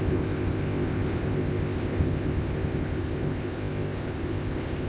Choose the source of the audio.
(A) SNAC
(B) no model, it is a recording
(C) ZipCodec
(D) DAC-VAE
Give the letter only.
C